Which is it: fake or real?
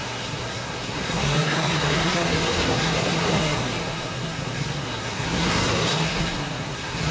fake